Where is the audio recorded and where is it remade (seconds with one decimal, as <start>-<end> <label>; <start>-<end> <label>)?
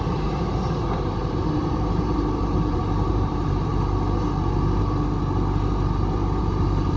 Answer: 0.0-3.7 remade; 3.7-6.4 recorded; 6.4-7.0 remade